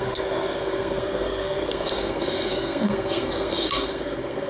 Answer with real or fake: fake